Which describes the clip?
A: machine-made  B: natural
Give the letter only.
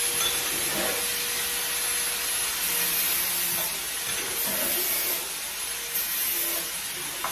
B